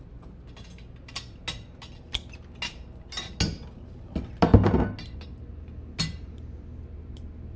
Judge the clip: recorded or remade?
recorded